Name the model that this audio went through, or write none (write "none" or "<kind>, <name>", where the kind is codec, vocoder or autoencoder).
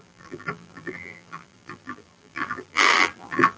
vocoder, BigVGAN v2